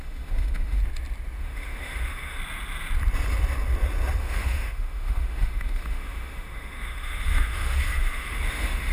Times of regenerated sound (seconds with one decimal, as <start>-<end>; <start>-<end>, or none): 0.0-0.8; 1.4-2.4; 4.2-8.9